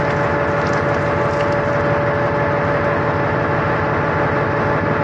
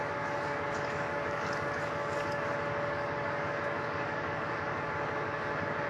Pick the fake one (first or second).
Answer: second